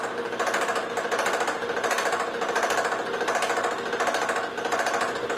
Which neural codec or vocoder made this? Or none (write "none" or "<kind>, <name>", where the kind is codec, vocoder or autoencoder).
none